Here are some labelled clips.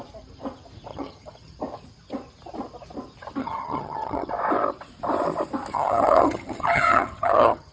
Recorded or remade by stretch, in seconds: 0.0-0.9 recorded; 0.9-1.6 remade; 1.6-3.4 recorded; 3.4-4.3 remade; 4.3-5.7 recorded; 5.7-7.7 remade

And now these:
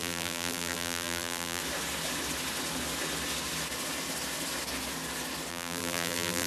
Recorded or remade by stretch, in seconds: 0.0-1.6 remade; 1.6-5.5 recorded; 5.5-6.5 remade

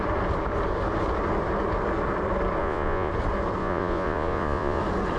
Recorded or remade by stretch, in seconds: 0.0-2.6 recorded; 2.6-3.1 remade; 3.1-3.6 recorded; 3.6-4.8 remade; 4.8-5.2 recorded

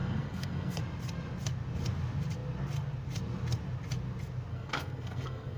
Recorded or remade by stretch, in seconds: 0.0-0.8 remade; 0.8-4.5 recorded; 4.5-5.6 remade

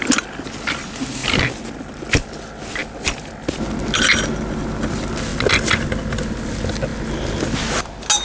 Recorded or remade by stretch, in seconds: 0.0-8.2 recorded